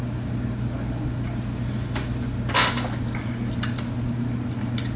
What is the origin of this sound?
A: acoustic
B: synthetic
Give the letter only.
A